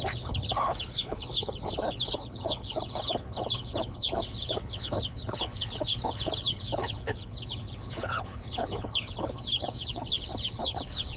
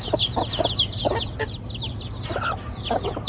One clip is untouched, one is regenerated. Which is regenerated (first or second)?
first